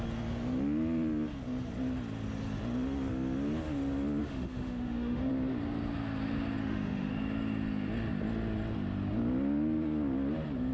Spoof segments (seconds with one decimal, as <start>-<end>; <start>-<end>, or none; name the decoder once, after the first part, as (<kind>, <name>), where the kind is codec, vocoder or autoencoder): 4.2-5.3 (autoencoder, DAC-VAE); 6.6-7.1